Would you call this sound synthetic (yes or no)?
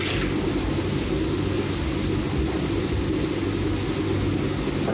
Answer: no